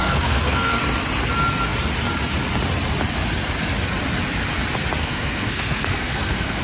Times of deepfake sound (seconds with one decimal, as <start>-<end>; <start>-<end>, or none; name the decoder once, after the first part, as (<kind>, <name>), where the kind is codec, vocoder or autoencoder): 0.0-0.8 (codec, SNAC); 5.0-6.6